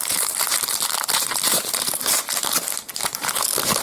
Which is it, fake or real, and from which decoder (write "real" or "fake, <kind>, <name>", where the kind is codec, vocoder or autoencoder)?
fake, vocoder, BigVGAN v2